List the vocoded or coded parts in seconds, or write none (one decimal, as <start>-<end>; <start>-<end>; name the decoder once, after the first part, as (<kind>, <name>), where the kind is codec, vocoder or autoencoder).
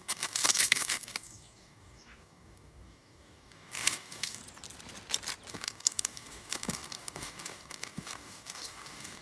0.0-4.4 (codec, DAC); 5.5-9.2